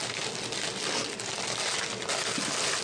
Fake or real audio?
real